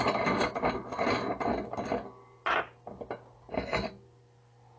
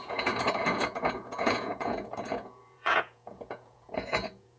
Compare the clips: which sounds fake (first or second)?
second